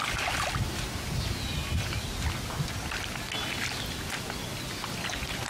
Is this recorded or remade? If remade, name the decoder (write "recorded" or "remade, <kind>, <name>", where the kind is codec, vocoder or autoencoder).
recorded